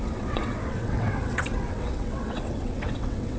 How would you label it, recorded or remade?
remade